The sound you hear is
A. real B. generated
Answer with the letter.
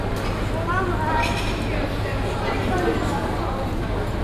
A